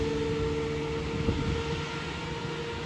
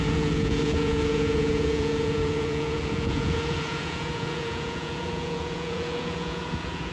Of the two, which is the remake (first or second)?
second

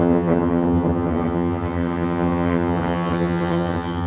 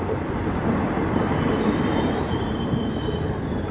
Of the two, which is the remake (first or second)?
first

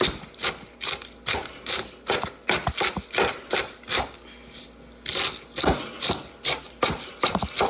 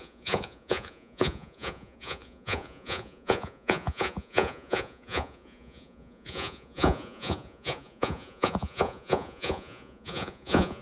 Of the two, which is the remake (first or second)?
second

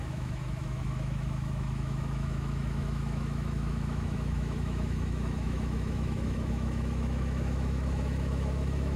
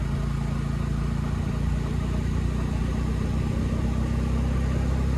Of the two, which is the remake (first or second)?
first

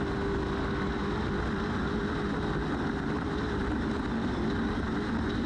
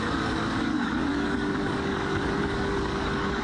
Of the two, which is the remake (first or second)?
second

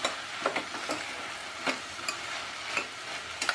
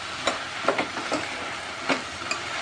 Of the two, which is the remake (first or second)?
second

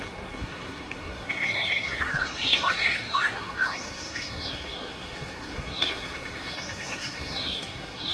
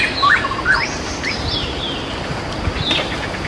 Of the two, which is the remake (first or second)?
first